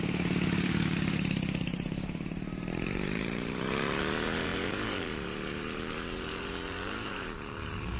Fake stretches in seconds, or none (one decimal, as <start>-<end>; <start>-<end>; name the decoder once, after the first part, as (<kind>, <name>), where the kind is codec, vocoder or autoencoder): 0.0-8.0 (vocoder, BigVGAN v2)